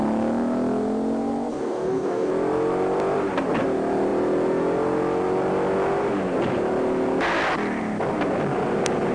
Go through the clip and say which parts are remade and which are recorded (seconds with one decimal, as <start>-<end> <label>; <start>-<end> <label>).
0.0-1.5 recorded; 1.5-2.3 remade; 2.3-9.1 recorded